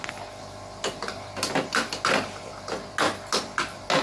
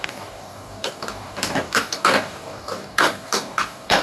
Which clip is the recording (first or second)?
first